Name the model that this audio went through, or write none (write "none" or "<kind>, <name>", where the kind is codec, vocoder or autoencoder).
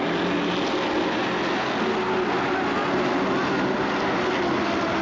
none